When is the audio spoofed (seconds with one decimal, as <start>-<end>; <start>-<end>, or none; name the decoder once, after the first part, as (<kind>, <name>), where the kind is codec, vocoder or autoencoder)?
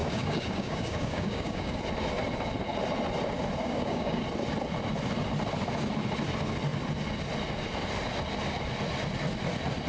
0.0-1.8 (codec, DAC); 3.6-4.2